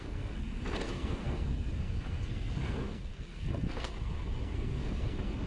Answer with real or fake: fake